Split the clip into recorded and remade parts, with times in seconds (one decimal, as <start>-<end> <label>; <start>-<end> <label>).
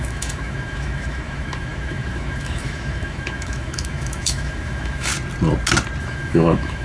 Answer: 0.0-5.1 remade; 5.1-6.0 recorded; 6.0-6.8 remade